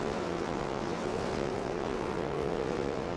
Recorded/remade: remade